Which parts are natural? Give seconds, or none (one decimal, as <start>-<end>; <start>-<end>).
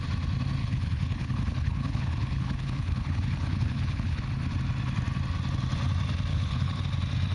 0.0-0.6; 4.2-6.3; 6.8-7.3